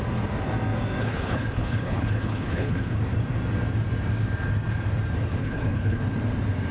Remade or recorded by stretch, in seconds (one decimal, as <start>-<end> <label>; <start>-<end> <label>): 0.0-1.0 recorded; 1.0-3.0 remade; 3.0-5.4 recorded; 5.4-6.0 remade; 6.0-6.7 recorded